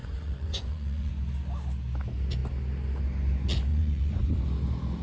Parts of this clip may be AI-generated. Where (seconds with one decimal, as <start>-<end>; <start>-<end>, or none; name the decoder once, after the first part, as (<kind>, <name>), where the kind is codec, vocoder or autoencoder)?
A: 0.0-1.1 (vocoder, Vocos); 3.7-4.3